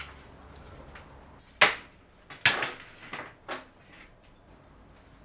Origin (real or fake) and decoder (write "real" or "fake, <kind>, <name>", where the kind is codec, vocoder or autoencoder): real